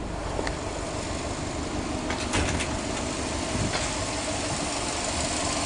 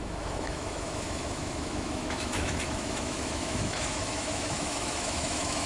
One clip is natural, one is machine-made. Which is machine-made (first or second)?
second